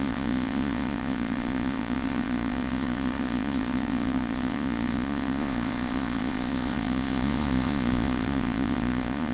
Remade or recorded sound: remade